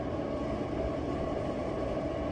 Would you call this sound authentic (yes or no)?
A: yes